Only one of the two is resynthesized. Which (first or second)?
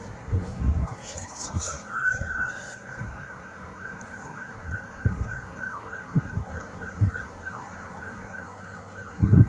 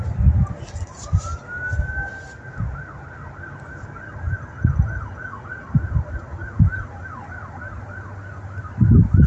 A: first